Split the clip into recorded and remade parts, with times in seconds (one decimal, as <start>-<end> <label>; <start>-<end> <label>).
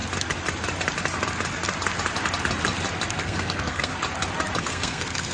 0.0-3.2 recorded; 3.2-3.9 remade; 3.9-4.6 recorded; 4.6-5.3 remade